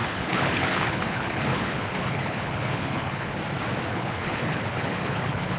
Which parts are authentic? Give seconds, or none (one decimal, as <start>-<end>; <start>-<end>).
3.4-3.9